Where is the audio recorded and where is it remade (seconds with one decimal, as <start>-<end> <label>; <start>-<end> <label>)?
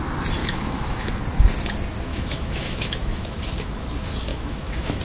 0.0-0.4 recorded; 0.4-1.1 remade; 1.1-2.1 recorded; 2.1-3.5 remade; 3.5-4.3 recorded; 4.3-5.0 remade